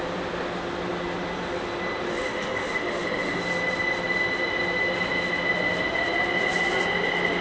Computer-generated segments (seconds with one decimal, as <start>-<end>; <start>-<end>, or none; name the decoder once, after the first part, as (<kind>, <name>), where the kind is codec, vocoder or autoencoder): 2.1-3.4 (autoencoder, DAC-VAE)